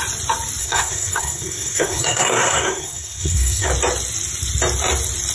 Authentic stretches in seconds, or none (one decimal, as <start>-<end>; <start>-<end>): 0.0-0.6; 3.7-5.3